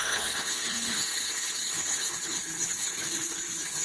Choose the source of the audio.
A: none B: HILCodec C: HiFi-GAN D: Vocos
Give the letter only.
B